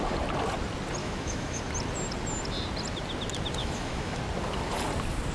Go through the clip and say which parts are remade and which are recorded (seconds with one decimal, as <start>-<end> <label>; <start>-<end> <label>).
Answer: 0.0-1.0 recorded; 1.0-1.6 remade; 1.6-3.6 recorded; 3.6-4.2 remade; 4.2-5.3 recorded